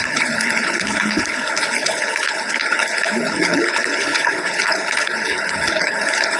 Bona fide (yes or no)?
no